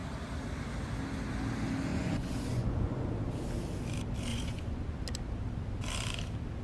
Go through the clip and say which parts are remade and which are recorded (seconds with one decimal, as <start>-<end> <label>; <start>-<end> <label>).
0.0-1.9 recorded; 1.9-3.1 remade; 3.1-4.3 recorded; 4.3-5.0 remade; 5.0-6.6 recorded